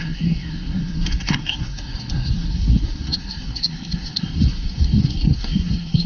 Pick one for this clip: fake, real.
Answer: fake